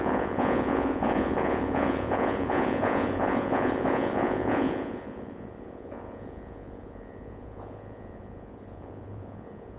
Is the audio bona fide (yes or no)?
no